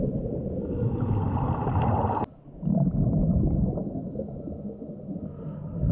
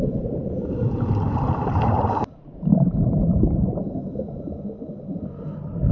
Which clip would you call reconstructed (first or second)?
second